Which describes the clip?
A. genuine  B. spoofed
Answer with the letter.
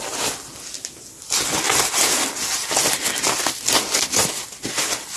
A